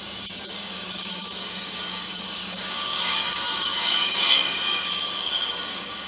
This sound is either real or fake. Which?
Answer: fake